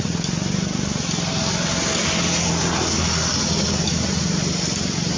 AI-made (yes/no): no